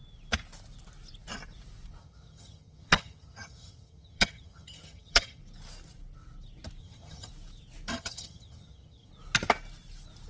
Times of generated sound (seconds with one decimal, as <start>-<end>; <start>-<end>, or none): 2.0-5.4; 6.8-7.3; 7.9-9.1

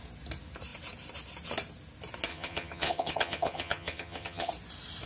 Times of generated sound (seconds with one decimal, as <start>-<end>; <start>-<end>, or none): 2.3-4.5

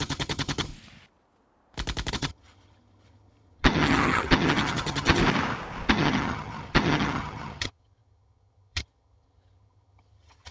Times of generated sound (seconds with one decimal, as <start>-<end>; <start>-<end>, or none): 0.0-0.7; 2.1-5.2; 5.9-10.5

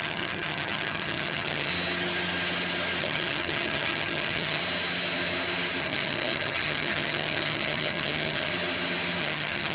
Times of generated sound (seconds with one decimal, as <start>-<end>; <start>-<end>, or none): 0.0-1.7; 3.0-4.6; 5.8-8.5; 9.2-9.7

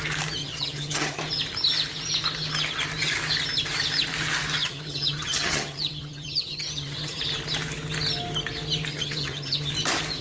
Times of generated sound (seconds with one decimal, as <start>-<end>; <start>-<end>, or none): 0.4-1.2; 4.6-7.2; 8.9-9.7

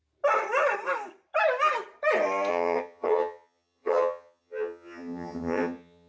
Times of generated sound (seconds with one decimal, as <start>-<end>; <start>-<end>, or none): 2.5-6.1

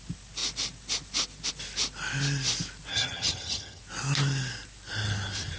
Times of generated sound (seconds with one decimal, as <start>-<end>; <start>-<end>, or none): 2.9-3.8

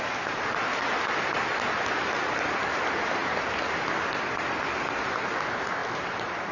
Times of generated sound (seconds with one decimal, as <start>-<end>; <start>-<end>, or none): none